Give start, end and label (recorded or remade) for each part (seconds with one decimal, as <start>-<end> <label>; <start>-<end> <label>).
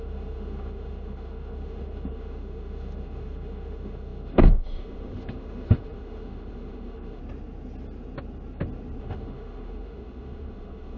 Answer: 0.0-7.2 remade; 7.2-9.0 recorded; 9.0-11.0 remade